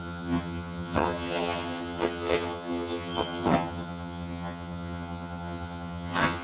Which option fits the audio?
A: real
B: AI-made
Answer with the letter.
B